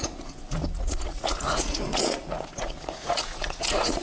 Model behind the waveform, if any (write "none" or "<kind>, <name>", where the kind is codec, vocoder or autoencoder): vocoder, Vocos